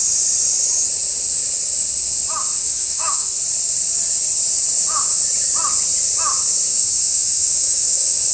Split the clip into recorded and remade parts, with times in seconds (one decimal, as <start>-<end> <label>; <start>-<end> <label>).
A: 0.0-2.6 recorded; 2.6-3.4 remade; 3.4-6.7 recorded; 6.7-8.3 remade